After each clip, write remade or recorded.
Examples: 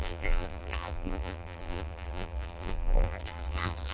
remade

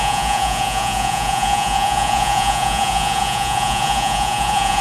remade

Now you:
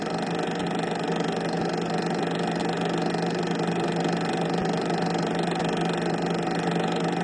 recorded